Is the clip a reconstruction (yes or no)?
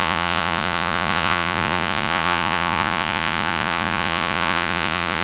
yes